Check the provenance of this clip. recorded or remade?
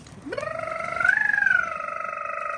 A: remade